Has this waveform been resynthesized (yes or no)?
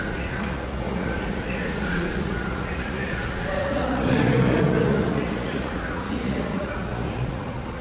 yes